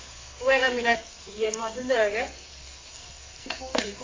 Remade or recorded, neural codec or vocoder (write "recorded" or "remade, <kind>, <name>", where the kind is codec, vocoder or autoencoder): remade, codec, SNAC